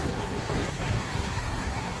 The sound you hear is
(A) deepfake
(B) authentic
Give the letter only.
A